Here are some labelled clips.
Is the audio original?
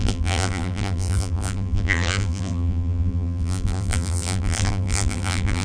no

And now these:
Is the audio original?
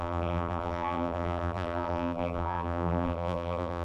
no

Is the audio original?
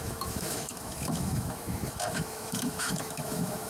no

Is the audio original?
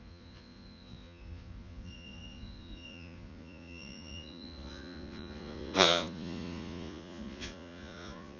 no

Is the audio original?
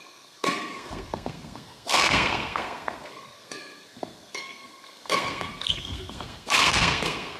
no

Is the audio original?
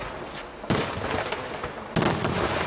yes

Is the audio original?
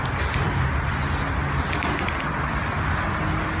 yes